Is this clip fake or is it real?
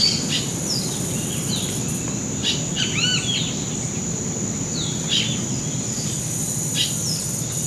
real